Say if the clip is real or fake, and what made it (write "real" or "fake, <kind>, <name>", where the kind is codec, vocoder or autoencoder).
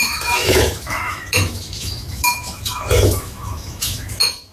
fake, autoencoder, DAC-VAE